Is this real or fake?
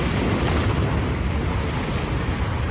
real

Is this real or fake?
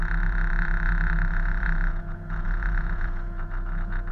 fake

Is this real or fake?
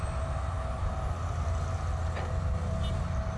real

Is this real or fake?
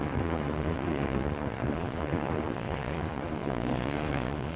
fake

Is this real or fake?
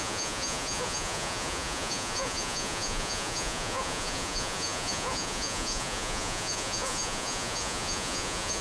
fake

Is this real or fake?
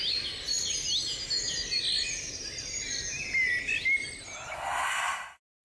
real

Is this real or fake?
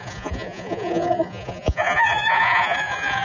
fake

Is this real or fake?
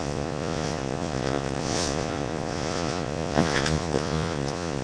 fake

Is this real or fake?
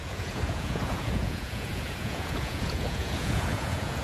fake